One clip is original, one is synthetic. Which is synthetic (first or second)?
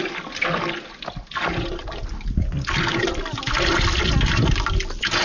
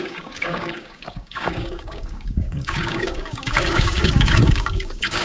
second